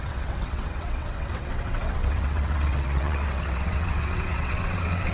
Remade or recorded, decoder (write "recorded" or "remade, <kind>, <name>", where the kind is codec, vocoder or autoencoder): remade, vocoder, WaveNeXt